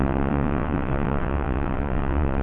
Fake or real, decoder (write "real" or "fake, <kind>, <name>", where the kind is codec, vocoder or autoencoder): fake, vocoder, WaveNeXt